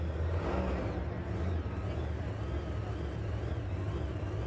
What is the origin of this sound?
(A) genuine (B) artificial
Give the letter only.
A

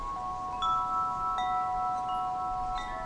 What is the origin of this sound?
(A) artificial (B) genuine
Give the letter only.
B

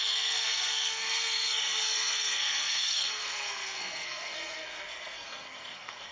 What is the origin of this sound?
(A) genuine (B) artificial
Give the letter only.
B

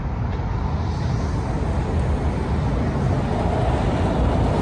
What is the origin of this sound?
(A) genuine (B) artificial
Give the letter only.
A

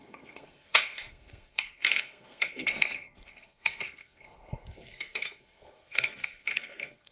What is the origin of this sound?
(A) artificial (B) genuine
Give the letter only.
A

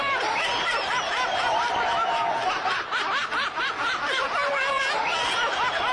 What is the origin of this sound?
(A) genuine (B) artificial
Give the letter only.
A